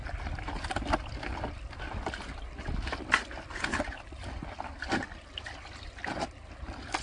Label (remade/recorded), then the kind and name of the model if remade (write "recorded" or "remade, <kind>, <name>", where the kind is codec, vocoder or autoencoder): recorded